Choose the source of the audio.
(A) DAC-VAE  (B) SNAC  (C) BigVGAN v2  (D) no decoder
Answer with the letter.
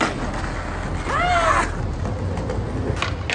D